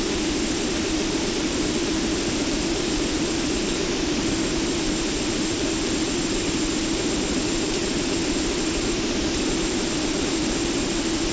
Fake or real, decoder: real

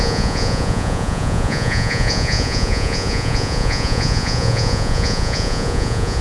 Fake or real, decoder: fake, vocoder, Vocos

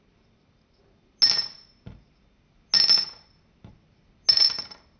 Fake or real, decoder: real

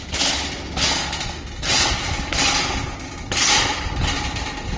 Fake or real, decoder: real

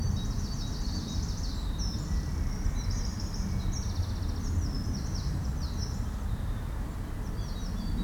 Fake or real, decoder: real